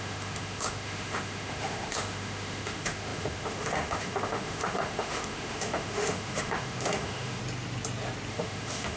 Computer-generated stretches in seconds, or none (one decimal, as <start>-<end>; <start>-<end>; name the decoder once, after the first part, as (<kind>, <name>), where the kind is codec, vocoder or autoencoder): 0.0-7.4 (autoencoder, DAC-VAE); 8.3-9.0